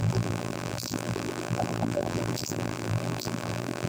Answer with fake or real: fake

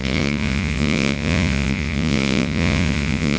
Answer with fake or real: fake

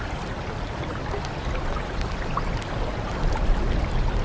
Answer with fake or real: real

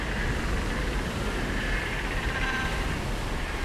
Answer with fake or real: real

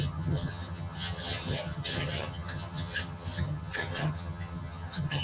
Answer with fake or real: fake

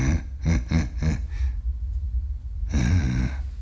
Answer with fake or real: real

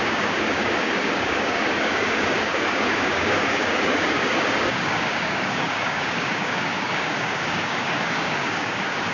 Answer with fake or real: fake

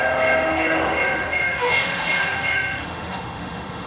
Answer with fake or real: fake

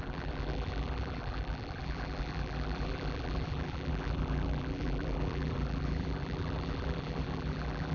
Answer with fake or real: fake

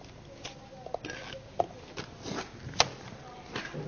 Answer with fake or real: real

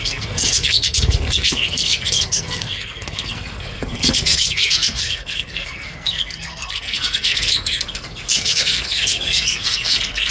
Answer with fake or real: fake